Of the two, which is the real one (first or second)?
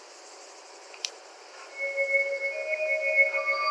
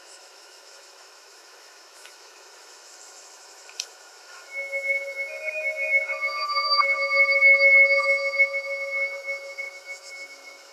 first